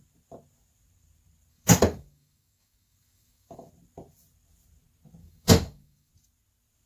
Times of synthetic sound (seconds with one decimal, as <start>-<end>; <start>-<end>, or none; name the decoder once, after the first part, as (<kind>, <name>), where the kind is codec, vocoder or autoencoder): 1.5-3.7 (codec, DAC); 5.2-6.1